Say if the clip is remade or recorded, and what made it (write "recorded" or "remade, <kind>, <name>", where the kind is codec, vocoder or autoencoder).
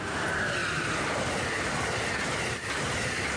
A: recorded